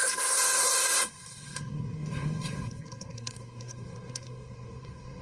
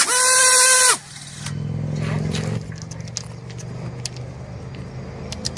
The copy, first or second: first